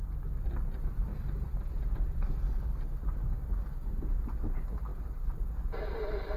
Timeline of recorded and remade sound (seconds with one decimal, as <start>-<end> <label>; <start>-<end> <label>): 0.0-1.1 recorded; 1.1-2.7 remade; 2.7-3.8 recorded; 3.8-4.4 remade; 4.4-6.4 recorded